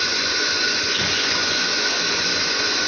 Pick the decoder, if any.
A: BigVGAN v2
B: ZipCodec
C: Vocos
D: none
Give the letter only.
C